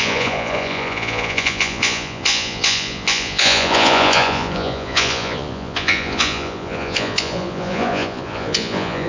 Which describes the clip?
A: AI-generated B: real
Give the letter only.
A